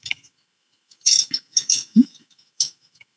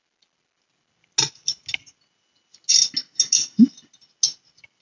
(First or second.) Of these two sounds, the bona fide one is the second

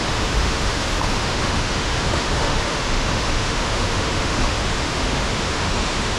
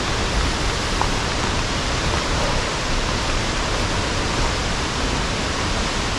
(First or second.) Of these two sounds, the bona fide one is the second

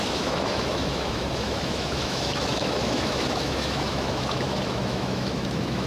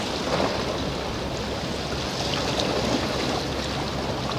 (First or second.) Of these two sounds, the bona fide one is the second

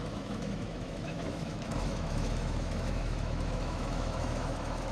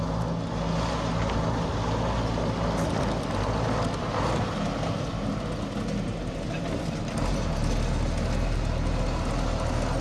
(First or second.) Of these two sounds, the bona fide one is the second